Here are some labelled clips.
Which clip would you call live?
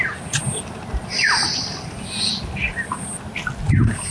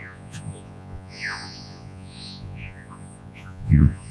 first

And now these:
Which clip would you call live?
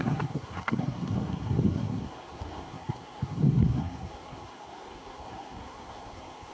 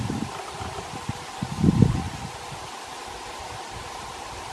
second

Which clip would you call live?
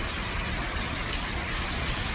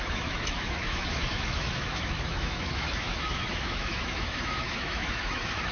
first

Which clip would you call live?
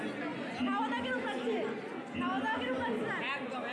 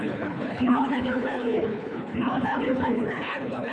first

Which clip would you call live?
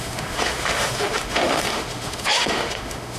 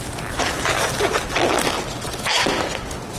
second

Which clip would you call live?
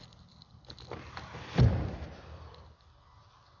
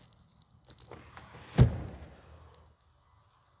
second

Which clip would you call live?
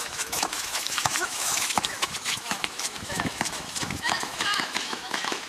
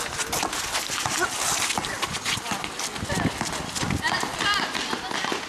second